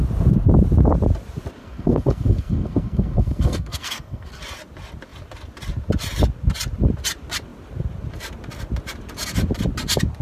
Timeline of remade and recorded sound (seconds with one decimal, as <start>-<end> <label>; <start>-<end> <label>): 0.0-1.6 recorded; 1.6-4.3 remade; 4.3-10.2 recorded